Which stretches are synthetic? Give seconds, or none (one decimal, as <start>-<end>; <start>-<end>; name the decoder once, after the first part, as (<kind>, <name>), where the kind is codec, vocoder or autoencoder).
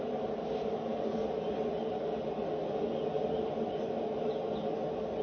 none